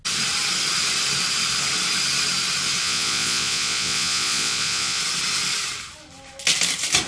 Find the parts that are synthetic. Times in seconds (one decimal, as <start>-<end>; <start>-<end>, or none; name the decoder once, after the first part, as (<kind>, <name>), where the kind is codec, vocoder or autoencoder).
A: 2.8-5.0 (vocoder, Vocos)